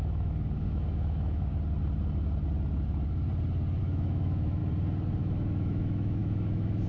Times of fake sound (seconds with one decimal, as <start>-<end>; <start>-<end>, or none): 0.0-1.5; 3.8-4.6; 5.2-6.9